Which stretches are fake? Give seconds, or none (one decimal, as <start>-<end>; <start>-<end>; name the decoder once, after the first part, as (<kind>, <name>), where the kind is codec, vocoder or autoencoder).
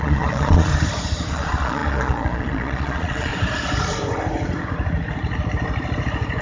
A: 0.0-0.7 (vocoder, Vocos); 1.3-3.3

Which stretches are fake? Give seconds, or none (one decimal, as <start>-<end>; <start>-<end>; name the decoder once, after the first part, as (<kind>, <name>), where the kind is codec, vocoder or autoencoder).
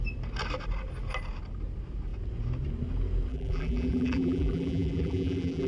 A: 3.3-5.7 (vocoder, BigVGAN v2)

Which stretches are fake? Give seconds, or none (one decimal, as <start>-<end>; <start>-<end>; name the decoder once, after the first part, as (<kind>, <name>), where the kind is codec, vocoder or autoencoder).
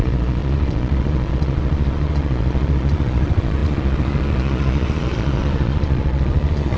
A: 0.0-6.8 (vocoder, Vocos)